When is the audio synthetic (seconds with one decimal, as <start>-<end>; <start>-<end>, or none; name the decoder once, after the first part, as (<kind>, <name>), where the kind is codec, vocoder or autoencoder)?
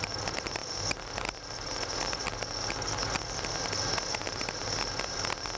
none